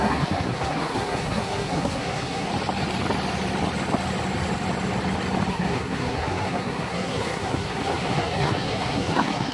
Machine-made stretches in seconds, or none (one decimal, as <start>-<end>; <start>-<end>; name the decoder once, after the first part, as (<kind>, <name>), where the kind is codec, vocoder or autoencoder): 0.0-2.5 (codec, SNAC); 5.5-9.5